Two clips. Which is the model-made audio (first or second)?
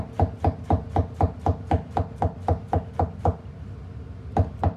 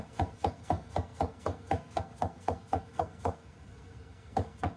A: second